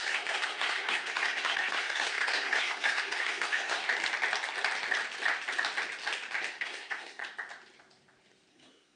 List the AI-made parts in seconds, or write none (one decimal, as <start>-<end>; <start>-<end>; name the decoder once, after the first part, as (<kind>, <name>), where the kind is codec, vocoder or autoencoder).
0.0-3.8 (codec, SNAC); 6.5-7.2; 8.5-9.0